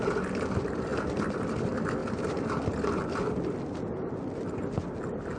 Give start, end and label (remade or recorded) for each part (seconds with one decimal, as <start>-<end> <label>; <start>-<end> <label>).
0.0-5.4 recorded